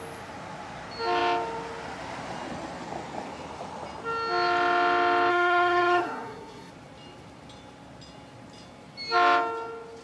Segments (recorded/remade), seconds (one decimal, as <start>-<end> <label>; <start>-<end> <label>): 0.0-5.3 recorded; 5.3-6.7 remade; 6.7-10.0 recorded